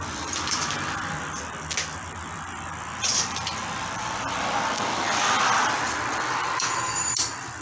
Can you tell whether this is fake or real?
fake